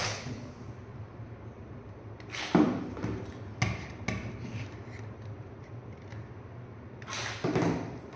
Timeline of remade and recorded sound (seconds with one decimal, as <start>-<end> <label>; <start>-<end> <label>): 0.0-0.6 remade; 0.6-8.2 recorded